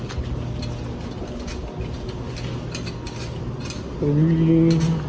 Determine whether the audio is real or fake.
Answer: real